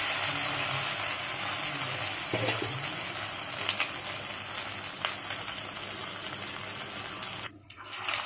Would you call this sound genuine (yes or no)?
yes